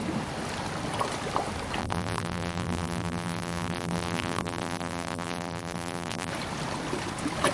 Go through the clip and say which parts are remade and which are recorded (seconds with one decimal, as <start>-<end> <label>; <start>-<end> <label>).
0.0-1.8 recorded; 1.8-6.3 remade; 6.3-7.5 recorded